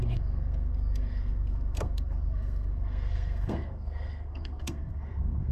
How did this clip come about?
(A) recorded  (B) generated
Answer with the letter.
B